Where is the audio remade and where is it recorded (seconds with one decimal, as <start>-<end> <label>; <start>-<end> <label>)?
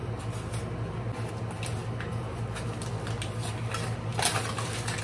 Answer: 0.0-5.0 recorded